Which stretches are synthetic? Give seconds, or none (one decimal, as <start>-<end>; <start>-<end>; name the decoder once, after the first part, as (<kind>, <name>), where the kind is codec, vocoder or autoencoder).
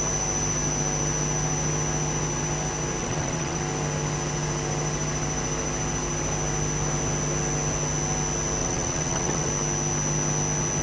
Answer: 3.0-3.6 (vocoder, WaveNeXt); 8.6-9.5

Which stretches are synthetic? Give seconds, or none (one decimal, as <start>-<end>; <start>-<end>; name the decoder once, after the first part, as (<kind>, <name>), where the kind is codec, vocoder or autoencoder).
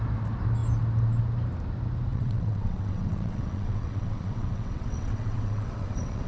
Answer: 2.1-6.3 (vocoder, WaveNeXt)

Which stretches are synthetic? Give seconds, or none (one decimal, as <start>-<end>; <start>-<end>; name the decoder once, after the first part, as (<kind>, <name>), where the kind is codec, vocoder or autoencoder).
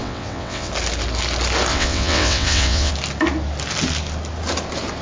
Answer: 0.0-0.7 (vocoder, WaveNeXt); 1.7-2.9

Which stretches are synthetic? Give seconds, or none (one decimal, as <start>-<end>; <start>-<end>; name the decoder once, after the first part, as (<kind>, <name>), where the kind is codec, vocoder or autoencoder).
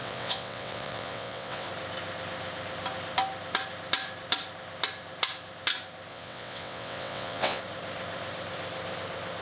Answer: 0.0-1.7 (vocoder, WaveNeXt); 6.1-7.6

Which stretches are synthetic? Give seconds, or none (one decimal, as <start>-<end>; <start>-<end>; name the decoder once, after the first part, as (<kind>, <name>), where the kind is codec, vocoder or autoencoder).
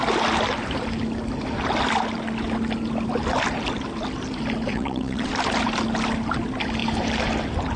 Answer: 4.7-5.3 (vocoder, WaveNeXt)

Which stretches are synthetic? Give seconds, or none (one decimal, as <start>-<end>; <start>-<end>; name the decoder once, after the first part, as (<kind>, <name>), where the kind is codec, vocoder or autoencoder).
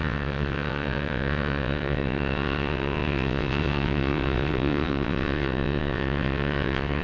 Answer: 0.0-7.0 (vocoder, WaveNeXt)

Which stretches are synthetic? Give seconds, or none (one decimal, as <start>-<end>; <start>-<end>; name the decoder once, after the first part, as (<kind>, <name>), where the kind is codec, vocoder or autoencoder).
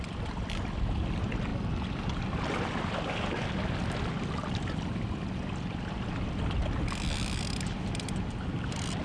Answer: none